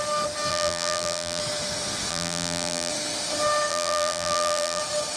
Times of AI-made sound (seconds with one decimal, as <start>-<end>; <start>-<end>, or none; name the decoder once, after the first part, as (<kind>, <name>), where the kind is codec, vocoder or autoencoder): 0.5-1.4 (vocoder, BigVGAN v2); 2.1-2.9; 3.7-4.8